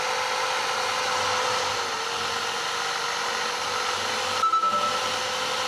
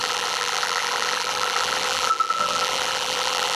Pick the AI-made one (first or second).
second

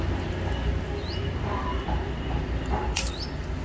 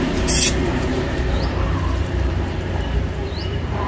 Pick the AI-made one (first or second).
second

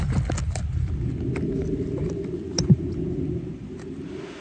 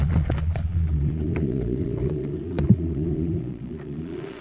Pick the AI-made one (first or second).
second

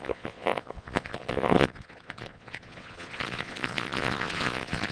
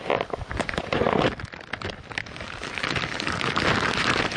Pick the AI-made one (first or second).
first